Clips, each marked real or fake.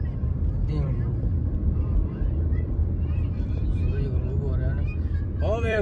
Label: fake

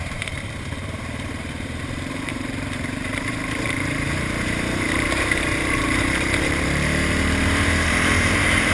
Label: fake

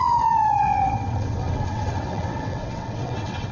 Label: fake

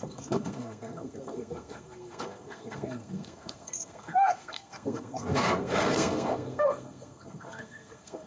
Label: fake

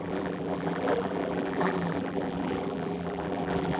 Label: fake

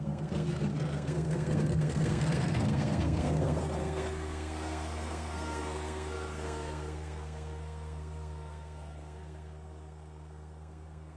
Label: fake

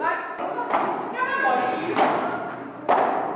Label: real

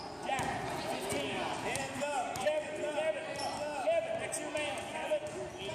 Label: real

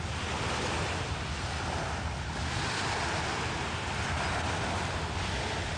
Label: real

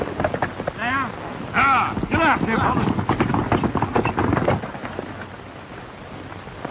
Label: real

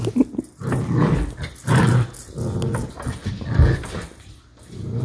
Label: real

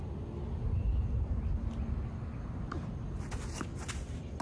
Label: real